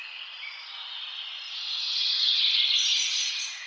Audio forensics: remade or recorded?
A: recorded